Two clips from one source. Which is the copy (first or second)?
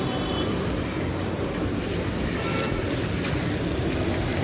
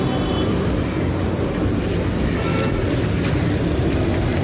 first